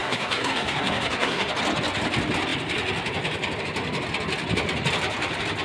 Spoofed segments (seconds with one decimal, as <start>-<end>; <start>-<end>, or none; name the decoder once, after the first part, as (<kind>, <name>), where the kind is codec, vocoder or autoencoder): 0.0-1.5 (codec, SNAC)